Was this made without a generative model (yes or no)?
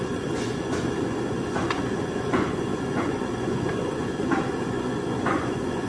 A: no